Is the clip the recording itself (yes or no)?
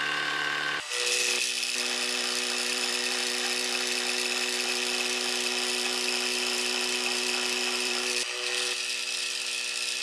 no